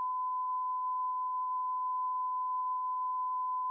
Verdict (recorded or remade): remade